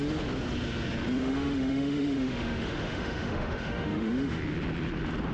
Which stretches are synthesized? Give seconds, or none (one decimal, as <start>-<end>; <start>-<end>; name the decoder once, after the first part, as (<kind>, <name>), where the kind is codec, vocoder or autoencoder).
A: 1.2-4.4 (autoencoder, DAC-VAE)